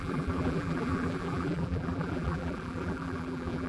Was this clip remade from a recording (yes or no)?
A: yes